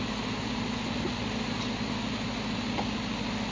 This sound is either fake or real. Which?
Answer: real